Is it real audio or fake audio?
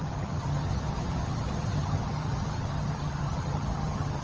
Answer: fake